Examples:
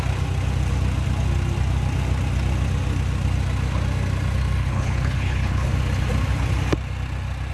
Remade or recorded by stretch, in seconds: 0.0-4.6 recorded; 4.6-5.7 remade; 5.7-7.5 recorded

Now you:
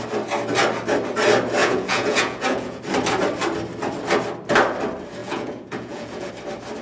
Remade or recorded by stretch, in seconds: 0.0-1.6 recorded; 1.6-2.8 remade; 2.8-5.2 recorded; 5.2-6.3 remade; 6.3-6.8 recorded